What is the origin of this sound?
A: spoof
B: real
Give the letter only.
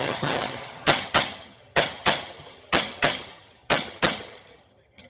A